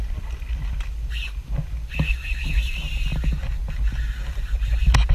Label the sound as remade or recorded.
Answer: recorded